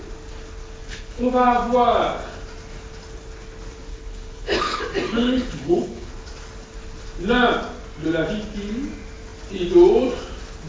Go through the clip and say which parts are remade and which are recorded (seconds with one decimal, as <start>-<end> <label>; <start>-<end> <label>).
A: 0.0-0.8 recorded; 0.8-1.3 remade; 1.3-3.9 recorded; 3.9-4.8 remade; 4.8-5.2 recorded; 5.2-6.1 remade; 6.1-10.7 recorded